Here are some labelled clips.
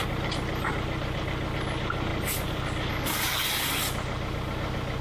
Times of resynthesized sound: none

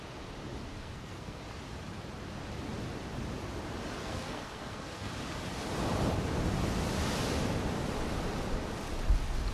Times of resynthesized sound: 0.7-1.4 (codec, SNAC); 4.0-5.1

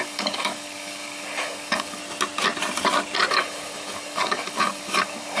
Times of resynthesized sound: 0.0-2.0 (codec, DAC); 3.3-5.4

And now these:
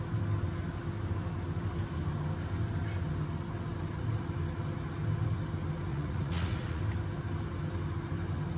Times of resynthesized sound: 5.9-6.8 (vocoder, Vocos)

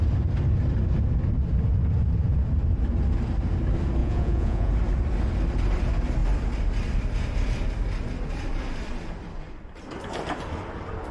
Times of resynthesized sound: 4.0-4.7 (vocoder, Vocos)

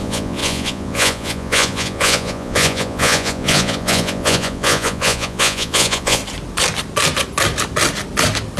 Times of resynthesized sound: 0.0-6.2 (vocoder, Vocos)